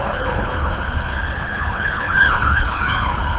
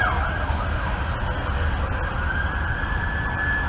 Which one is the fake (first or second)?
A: first